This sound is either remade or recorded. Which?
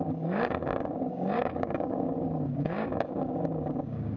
remade